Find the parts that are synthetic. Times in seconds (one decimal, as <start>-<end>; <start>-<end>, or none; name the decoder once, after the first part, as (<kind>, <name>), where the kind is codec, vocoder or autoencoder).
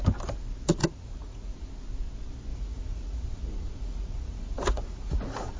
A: 0.8-1.7 (vocoder, Vocos); 2.5-5.6